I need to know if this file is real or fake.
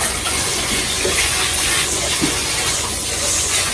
fake